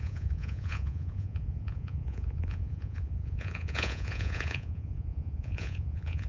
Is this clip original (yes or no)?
no